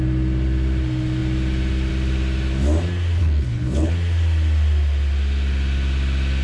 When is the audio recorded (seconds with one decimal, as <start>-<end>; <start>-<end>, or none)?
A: 0.0-3.2; 3.9-6.4